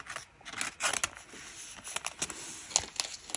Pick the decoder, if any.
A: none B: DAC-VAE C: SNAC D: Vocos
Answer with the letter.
A